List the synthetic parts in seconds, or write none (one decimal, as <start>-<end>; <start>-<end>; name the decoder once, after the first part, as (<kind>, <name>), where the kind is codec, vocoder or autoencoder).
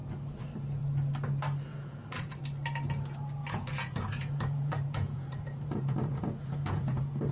1.7-2.4 (vocoder, Vocos); 3.4-7.3